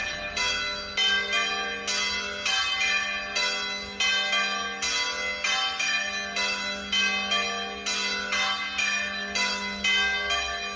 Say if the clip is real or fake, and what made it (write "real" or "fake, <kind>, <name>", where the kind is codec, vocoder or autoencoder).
real